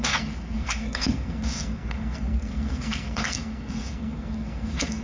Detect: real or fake fake